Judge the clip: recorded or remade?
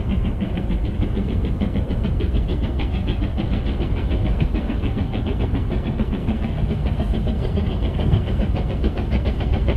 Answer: remade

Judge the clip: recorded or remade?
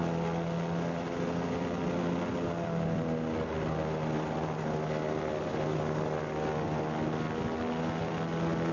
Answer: recorded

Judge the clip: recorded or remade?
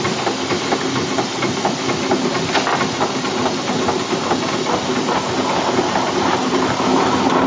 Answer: recorded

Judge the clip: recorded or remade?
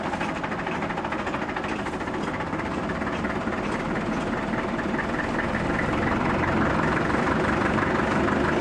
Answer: recorded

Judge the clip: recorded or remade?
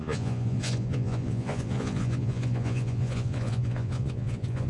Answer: remade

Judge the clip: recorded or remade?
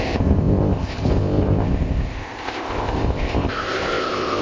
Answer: remade